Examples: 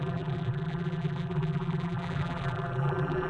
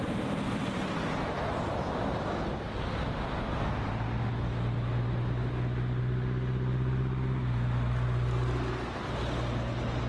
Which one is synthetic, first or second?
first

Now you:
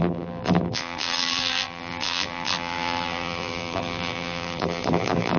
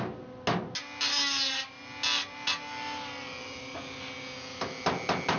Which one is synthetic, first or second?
first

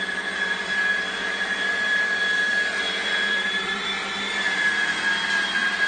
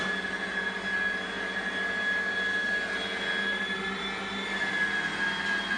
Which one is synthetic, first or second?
first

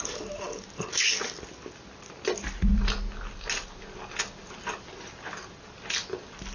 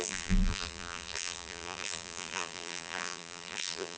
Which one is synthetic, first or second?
second